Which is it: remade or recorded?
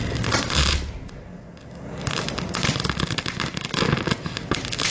recorded